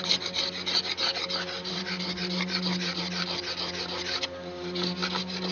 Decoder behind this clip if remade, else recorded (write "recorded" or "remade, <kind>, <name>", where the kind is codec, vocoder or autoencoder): recorded